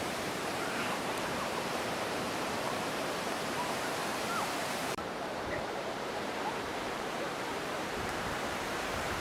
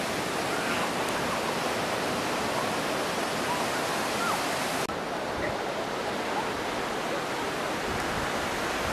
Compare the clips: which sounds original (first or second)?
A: second